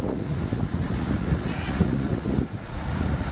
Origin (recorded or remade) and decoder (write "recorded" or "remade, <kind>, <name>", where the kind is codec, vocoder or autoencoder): remade, vocoder, Vocos